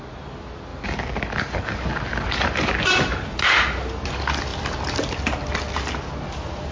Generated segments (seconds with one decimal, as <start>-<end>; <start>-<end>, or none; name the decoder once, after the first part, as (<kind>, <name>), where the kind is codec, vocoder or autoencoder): 0.7-2.7 (vocoder, BigVGAN v2)

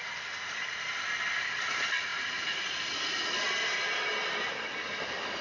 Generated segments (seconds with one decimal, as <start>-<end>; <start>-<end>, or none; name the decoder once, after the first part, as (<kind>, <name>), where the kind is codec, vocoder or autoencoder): 2.1-2.7 (vocoder, BigVGAN v2)

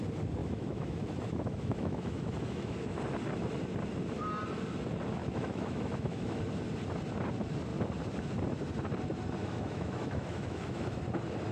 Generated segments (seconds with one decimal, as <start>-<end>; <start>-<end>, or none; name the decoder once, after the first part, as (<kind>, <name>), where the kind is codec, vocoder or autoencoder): 0.4-3.0 (autoencoder, DAC-VAE); 5.2-6.4; 9.4-11.0

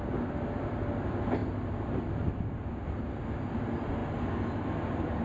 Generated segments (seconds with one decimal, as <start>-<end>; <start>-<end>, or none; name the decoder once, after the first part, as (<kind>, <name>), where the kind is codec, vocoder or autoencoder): none

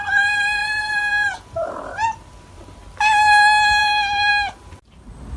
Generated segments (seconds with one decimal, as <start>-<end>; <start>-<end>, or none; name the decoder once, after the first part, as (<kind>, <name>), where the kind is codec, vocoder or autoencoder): 0.6-2.7 (vocoder, BigVGAN v2); 3.8-4.3

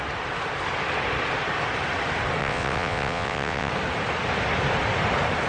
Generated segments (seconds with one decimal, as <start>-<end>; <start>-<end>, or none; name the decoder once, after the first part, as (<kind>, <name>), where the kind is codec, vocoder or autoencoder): 2.4-3.7 (vocoder, WaveNeXt)